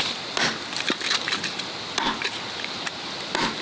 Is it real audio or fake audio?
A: real